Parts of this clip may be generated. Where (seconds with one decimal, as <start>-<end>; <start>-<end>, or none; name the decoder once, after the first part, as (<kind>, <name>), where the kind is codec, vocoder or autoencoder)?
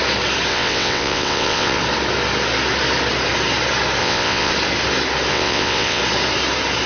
0.5-1.8 (vocoder, WaveNeXt); 4.0-4.5; 5.3-6.0